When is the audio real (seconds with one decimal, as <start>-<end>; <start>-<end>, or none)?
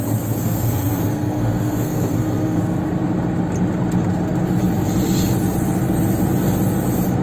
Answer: 0.0-0.4; 2.6-7.2